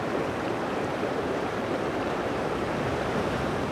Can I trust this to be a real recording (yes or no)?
no